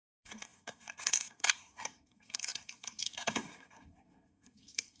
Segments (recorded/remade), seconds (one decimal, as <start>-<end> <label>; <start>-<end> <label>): 0.0-5.0 remade